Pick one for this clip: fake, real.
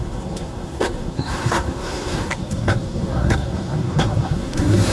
fake